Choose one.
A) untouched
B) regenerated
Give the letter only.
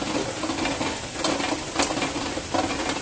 A